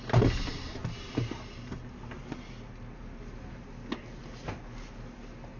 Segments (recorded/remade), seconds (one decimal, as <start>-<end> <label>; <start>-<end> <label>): 0.0-5.6 recorded